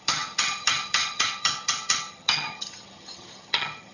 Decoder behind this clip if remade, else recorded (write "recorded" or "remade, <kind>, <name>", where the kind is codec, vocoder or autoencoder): remade, vocoder, HiFi-GAN